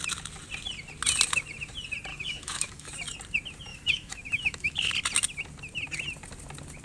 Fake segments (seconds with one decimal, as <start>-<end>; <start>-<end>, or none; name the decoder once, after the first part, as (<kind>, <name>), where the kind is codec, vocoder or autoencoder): 2.1-2.9 (autoencoder, DAC-VAE); 3.7-4.9